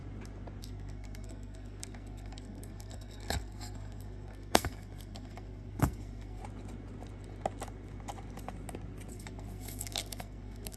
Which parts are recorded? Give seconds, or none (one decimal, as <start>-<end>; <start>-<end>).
0.0-0.6; 6.4-9.1

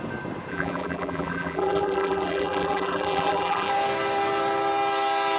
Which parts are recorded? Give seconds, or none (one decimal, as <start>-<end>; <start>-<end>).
0.0-0.5; 3.7-5.4